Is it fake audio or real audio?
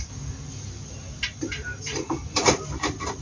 real